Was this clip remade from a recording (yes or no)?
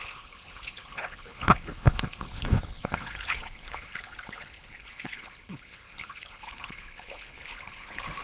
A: yes